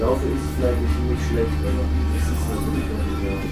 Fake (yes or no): no